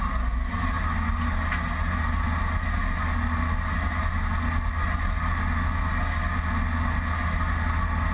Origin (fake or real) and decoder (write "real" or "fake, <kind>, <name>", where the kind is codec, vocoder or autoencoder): real